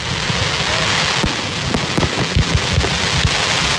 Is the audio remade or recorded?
remade